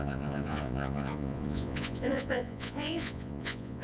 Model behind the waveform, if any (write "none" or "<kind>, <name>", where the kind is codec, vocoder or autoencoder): vocoder, Vocos